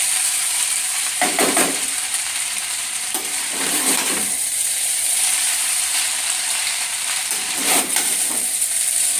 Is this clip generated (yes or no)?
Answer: yes